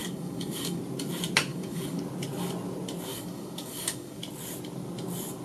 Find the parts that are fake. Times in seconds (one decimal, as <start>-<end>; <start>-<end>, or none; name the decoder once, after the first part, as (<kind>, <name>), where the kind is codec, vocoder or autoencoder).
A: 0.0-0.8 (codec, DAC); 1.5-2.0; 3.1-4.2